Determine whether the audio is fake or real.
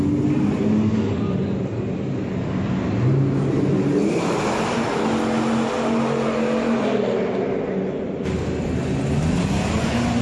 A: real